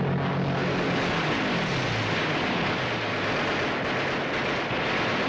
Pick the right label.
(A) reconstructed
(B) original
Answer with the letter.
B